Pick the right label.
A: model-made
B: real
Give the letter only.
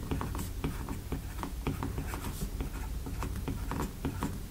A